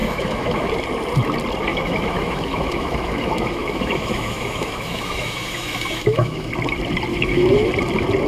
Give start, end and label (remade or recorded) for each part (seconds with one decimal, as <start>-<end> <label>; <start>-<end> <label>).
0.0-0.7 remade; 0.7-1.7 recorded; 1.7-6.5 remade; 6.5-7.1 recorded; 7.1-7.7 remade; 7.7-8.3 recorded